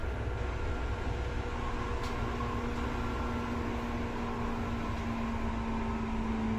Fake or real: real